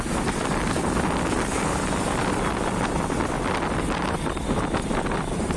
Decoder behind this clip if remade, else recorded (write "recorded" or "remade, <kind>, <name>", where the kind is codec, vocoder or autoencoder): recorded